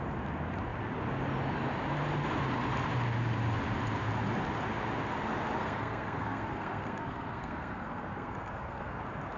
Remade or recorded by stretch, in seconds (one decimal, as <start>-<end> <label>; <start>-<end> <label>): 0.0-5.6 recorded; 5.6-9.0 remade; 9.0-9.4 recorded